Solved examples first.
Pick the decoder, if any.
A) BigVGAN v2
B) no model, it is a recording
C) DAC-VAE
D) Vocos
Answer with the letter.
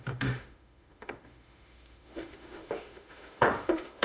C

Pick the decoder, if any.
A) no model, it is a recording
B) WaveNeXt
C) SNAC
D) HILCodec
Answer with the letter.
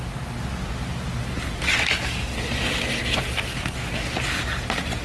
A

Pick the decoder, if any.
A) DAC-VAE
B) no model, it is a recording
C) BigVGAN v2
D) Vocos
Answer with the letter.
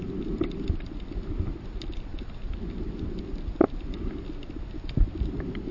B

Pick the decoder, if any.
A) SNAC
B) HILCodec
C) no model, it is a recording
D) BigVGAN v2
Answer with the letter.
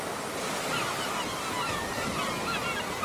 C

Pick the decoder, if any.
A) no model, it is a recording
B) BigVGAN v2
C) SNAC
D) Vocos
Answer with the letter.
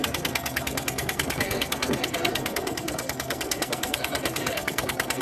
C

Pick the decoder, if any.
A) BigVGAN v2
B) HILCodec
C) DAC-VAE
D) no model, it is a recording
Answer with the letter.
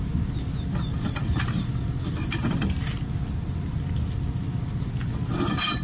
D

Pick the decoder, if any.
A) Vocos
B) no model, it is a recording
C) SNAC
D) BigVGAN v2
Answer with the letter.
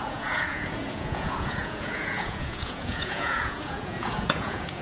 A